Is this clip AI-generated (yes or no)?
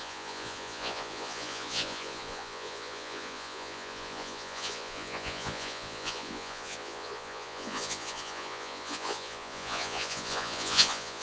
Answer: yes